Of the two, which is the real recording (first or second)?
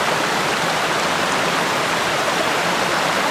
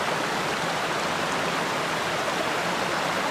second